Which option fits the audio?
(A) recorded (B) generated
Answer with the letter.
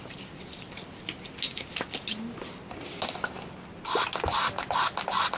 A